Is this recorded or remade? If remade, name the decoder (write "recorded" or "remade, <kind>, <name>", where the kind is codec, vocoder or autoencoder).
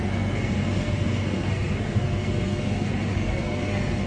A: remade, codec, SNAC